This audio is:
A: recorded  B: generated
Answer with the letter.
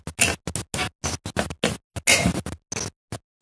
A